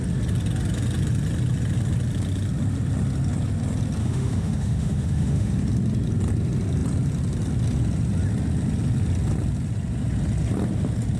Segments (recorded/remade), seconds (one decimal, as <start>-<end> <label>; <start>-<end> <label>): 0.0-4.0 recorded; 4.0-5.5 remade; 5.5-11.2 recorded